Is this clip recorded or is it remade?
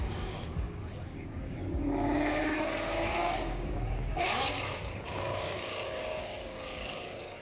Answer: remade